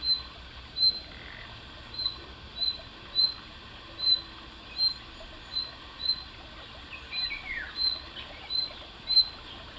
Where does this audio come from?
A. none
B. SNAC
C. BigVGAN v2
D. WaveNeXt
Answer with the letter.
A